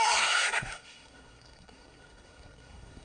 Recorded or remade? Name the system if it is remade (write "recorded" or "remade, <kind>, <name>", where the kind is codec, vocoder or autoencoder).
remade, codec, SNAC